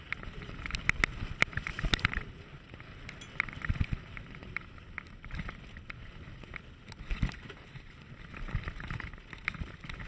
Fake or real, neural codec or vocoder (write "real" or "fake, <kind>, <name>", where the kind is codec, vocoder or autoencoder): real